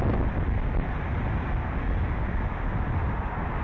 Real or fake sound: real